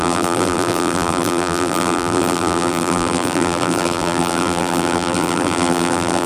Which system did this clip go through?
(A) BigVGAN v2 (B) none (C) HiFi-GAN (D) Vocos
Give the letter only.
A